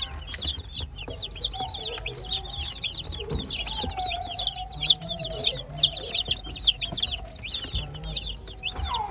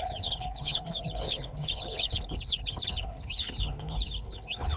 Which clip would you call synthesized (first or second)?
second